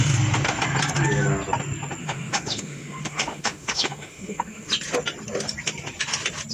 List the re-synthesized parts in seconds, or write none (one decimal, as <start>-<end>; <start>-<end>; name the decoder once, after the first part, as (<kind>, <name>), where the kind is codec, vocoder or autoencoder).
2.0-4.7 (autoencoder, DAC-VAE)